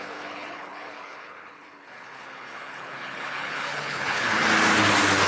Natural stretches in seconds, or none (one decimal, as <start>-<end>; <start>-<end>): 4.4-5.3